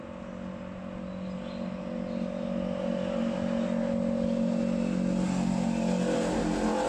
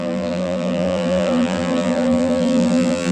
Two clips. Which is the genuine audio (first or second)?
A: first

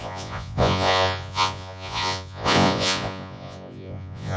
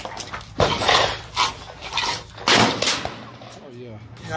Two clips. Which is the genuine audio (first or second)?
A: second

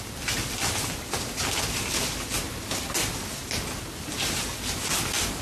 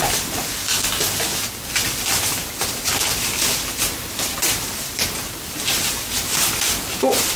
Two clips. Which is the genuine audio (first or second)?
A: first